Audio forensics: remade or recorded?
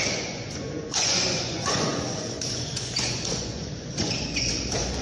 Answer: remade